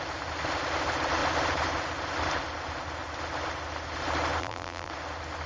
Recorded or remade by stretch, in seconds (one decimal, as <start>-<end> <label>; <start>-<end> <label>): 0.0-4.4 recorded; 4.4-4.9 remade; 4.9-5.5 recorded